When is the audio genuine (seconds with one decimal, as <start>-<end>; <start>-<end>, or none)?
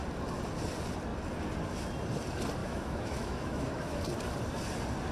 0.0-2.6; 4.0-5.1